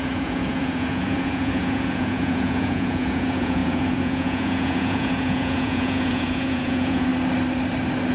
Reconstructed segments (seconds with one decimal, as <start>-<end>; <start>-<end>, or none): 0.0-7.1